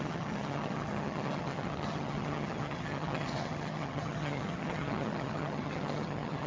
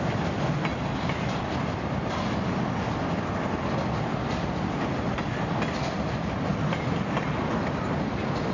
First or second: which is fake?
first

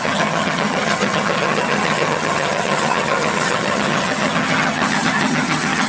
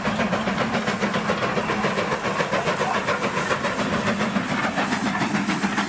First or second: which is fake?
first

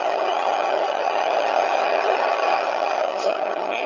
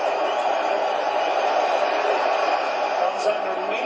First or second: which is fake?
first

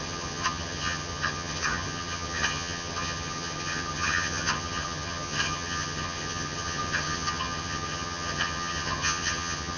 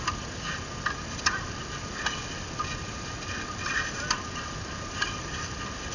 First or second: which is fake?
first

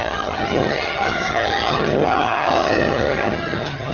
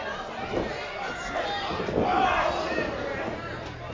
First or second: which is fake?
first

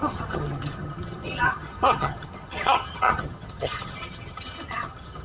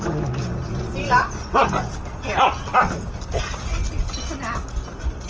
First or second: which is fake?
first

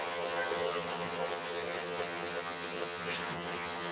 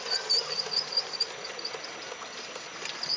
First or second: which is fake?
first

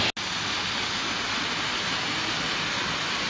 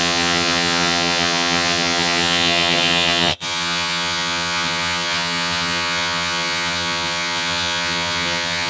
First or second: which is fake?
second